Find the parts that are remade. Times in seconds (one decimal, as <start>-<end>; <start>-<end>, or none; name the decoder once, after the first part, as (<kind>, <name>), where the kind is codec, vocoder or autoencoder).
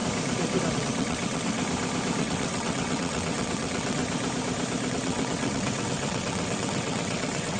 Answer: 0.7-1.6 (vocoder, WaveNeXt); 2.2-4.0; 4.9-7.6